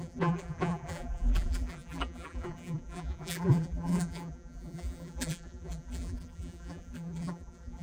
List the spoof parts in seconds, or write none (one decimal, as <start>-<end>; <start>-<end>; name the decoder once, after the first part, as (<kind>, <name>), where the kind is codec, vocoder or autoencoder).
0.0-7.8 (vocoder, BigVGAN v2)